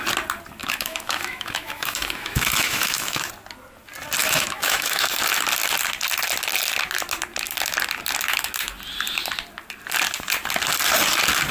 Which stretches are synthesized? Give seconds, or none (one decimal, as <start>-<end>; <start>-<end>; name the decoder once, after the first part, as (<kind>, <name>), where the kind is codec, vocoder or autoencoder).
0.6-3.3 (autoencoder, DAC-VAE); 4.2-5.1